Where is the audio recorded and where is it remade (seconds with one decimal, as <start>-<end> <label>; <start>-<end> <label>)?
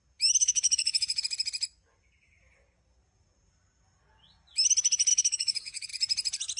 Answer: 0.0-0.4 recorded; 0.4-1.2 remade; 1.2-5.1 recorded; 5.1-5.9 remade; 5.9-6.6 recorded